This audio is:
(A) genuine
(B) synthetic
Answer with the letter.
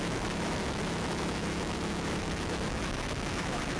B